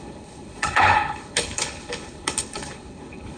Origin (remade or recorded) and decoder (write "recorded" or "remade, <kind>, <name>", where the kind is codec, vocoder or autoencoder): remade, codec, HILCodec